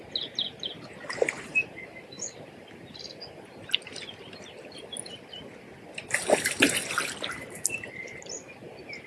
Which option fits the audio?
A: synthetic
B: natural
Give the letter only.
B